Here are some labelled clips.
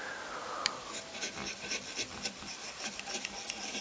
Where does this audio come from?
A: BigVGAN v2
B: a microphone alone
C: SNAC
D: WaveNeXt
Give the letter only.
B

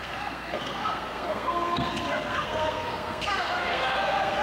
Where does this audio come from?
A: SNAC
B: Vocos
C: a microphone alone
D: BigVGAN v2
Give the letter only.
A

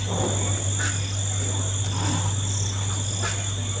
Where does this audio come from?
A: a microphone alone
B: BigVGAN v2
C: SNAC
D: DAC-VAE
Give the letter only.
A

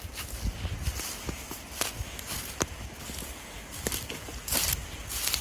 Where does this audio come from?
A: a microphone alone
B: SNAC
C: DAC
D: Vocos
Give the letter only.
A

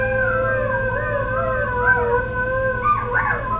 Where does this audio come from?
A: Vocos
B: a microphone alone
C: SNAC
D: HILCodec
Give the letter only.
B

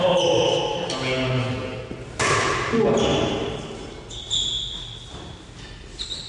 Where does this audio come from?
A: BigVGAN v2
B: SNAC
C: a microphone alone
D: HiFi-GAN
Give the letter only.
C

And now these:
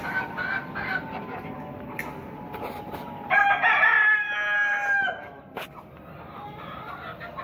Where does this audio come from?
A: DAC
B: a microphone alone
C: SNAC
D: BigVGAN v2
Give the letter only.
B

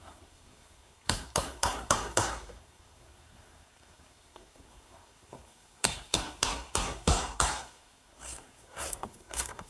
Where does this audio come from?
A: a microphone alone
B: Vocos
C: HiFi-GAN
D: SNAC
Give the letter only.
D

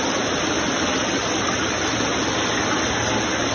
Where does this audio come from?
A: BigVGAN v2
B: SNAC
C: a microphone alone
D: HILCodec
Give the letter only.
C